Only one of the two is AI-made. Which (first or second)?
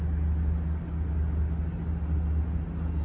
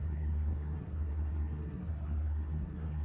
second